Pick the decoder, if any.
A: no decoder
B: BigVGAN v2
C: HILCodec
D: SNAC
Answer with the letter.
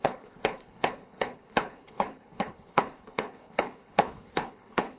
C